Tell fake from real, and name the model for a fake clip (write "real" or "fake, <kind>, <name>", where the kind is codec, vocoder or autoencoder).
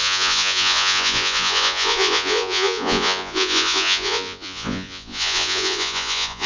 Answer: fake, vocoder, Vocos